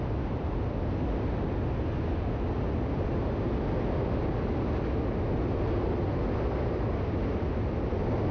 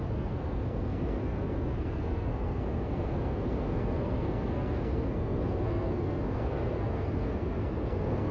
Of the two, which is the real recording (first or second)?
first